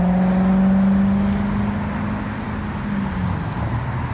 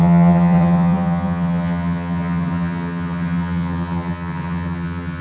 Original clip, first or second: first